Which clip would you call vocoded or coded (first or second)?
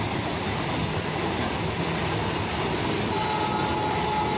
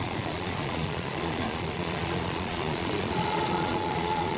second